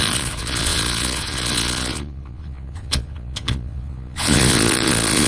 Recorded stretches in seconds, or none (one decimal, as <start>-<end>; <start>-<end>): none